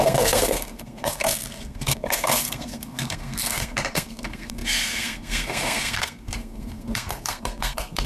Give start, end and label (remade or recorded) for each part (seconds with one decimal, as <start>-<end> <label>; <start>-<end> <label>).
0.0-8.1 remade